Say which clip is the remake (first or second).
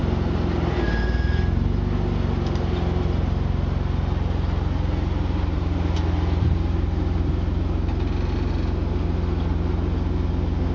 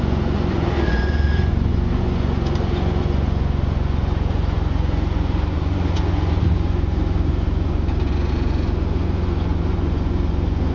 second